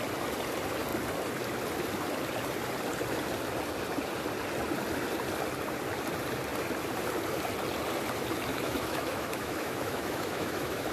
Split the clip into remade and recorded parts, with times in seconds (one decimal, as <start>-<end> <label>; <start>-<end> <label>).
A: 0.0-8.5 recorded; 8.5-10.9 remade